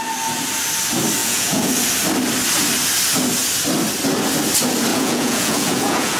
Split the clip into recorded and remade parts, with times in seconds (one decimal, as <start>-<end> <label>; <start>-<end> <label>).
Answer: 0.0-1.2 recorded; 1.2-1.7 remade; 1.7-4.9 recorded; 4.9-6.2 remade